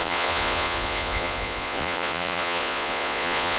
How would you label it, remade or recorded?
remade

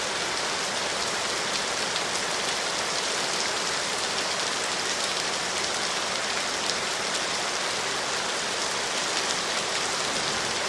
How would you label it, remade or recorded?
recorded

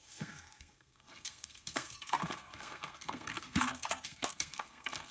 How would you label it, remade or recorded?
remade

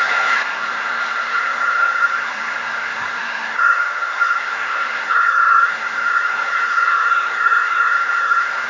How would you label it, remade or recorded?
remade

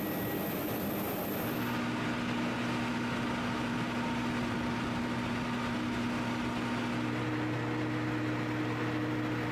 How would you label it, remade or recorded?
recorded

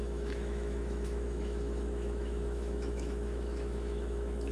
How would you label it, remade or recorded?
remade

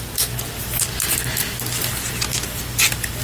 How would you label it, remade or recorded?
recorded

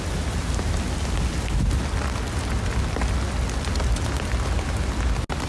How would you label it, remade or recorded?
recorded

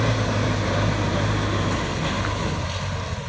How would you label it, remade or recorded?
recorded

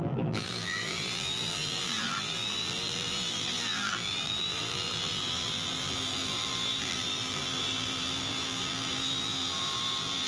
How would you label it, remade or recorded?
remade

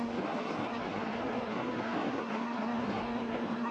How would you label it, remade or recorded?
remade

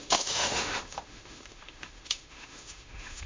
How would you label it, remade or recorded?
remade